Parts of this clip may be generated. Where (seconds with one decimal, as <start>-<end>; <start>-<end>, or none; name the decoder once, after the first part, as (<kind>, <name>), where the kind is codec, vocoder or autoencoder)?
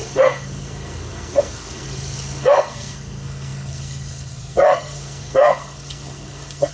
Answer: 0.0-6.7 (codec, SNAC)